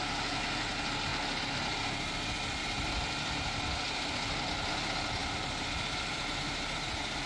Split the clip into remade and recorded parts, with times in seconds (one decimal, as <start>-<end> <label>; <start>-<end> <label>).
0.0-7.3 recorded